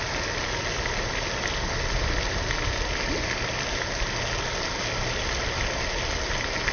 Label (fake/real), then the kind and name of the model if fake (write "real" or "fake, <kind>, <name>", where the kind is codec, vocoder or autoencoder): real